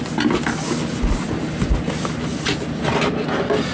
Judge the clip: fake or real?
real